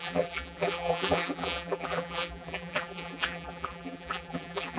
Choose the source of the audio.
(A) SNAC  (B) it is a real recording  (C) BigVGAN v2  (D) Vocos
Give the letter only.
C